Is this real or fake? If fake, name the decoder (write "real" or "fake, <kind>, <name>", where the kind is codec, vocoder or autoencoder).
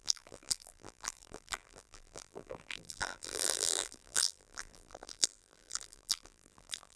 fake, vocoder, BigVGAN v2